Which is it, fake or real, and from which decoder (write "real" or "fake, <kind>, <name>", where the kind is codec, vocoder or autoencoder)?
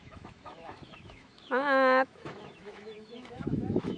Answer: fake, autoencoder, DAC-VAE